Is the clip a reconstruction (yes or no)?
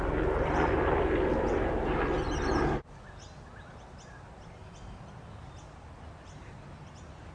no